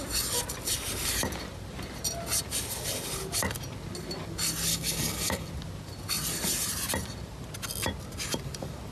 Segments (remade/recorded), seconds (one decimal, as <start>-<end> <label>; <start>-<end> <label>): 0.0-4.7 recorded; 4.7-5.5 remade; 5.5-8.9 recorded